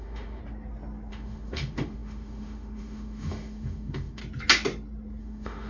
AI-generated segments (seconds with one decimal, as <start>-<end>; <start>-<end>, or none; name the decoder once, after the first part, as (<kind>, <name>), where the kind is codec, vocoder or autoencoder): 0.0-0.4 (autoencoder, DAC-VAE); 1.1-4.2; 5.2-5.7